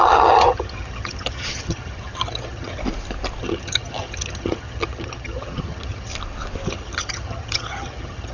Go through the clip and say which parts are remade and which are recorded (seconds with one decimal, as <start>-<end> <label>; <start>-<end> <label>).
0.0-2.8 remade; 2.8-3.4 recorded; 3.4-6.1 remade; 6.1-6.7 recorded; 6.7-8.3 remade